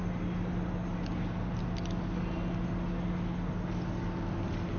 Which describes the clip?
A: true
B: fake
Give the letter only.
A